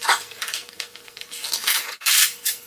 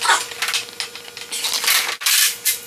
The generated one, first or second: first